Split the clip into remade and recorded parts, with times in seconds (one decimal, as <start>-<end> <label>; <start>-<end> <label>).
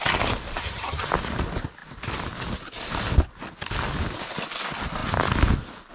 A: 0.0-0.6 recorded; 0.6-1.1 remade; 1.1-5.9 recorded